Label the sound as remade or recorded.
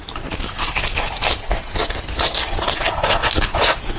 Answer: recorded